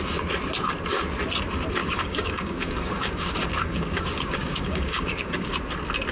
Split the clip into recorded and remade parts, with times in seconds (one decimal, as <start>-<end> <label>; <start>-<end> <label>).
0.0-1.8 recorded; 1.8-5.5 remade; 5.5-6.1 recorded